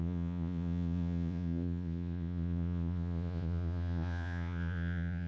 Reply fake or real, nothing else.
fake